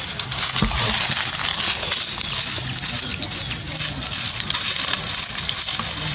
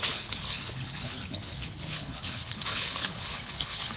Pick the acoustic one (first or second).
first